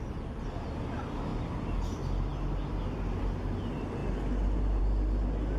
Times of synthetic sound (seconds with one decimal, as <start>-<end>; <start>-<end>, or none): none